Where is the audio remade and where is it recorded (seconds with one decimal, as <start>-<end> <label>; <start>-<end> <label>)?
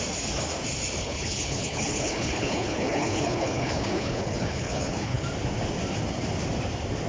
0.0-1.0 recorded; 1.0-5.2 remade; 5.2-7.1 recorded